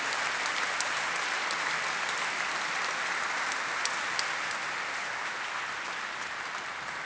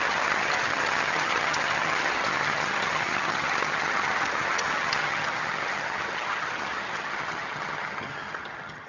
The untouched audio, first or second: first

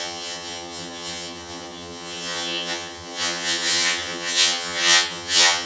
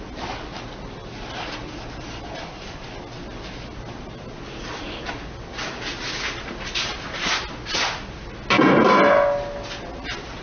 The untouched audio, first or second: second